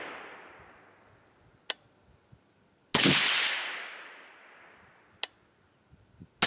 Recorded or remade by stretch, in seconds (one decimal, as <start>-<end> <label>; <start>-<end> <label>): 0.0-6.5 recorded